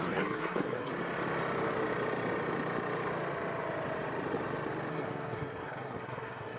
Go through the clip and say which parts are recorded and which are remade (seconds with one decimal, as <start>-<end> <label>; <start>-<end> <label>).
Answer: 0.0-0.9 remade; 0.9-4.9 recorded; 4.9-6.6 remade